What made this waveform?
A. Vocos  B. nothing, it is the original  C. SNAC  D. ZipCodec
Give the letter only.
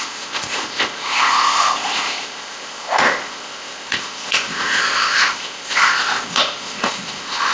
D